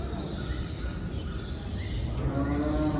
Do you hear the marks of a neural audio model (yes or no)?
no